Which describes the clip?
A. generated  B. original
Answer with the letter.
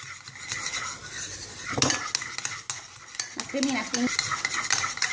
B